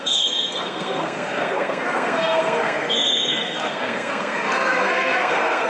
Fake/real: fake